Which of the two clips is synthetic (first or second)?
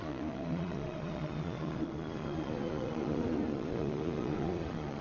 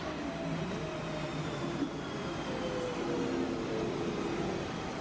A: first